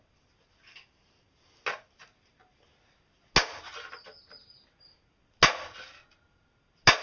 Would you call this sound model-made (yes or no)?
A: no